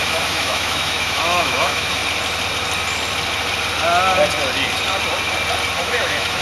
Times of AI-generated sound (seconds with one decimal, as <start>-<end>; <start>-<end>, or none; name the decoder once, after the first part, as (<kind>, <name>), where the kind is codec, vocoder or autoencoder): 0.0-2.0 (autoencoder, DAC-VAE); 5.8-6.4